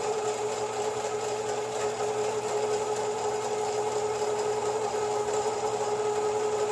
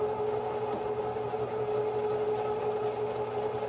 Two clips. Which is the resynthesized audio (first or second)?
first